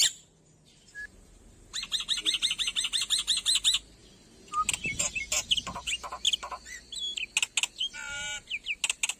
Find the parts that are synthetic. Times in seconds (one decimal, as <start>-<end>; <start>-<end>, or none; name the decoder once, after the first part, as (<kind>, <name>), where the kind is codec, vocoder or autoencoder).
none